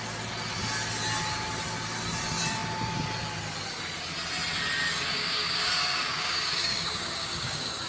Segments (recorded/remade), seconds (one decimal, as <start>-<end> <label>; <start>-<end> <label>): 0.0-5.1 recorded; 5.1-7.9 remade